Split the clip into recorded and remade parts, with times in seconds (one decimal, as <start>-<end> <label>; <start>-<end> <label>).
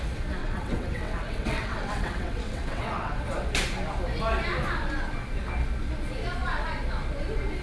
0.0-0.4 recorded; 0.4-3.2 remade; 3.2-7.6 recorded